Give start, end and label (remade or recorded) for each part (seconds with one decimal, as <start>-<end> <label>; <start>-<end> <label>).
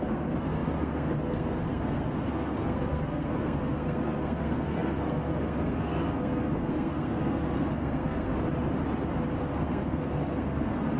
0.0-8.3 remade; 8.3-9.4 recorded; 9.4-11.0 remade